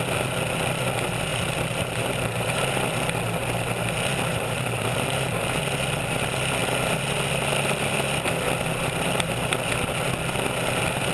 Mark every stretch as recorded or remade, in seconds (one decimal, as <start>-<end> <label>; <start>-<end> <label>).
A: 0.0-1.3 recorded; 1.3-2.7 remade; 2.7-4.3 recorded; 4.3-5.3 remade; 5.3-11.1 recorded